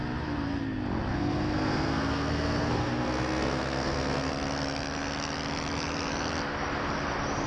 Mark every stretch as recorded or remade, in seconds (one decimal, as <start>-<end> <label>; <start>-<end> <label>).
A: 0.0-1.1 recorded; 1.1-4.3 remade; 4.3-7.5 recorded